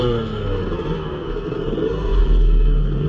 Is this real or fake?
fake